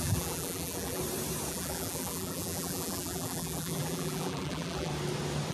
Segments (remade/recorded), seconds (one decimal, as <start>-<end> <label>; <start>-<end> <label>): 0.0-1.0 remade; 1.0-1.5 recorded; 1.5-4.9 remade; 4.9-5.5 recorded